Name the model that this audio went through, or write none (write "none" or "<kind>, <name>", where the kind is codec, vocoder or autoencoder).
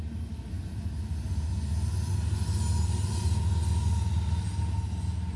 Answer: none